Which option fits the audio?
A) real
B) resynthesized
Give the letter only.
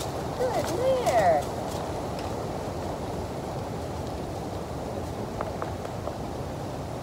A